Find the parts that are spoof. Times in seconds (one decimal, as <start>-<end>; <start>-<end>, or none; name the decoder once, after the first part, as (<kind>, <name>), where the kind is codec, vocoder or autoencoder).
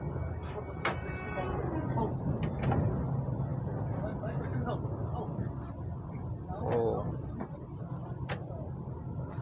none